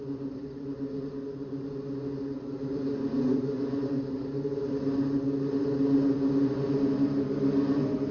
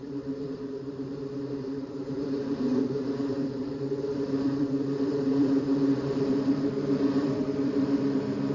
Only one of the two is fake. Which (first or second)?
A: second